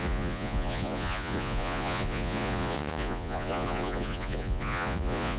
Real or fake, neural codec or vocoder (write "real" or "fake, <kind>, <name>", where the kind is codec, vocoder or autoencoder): fake, vocoder, Vocos